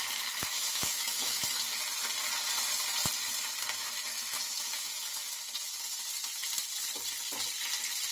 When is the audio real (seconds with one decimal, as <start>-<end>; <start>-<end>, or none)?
0.0-0.4; 1.6-3.8; 4.9-8.1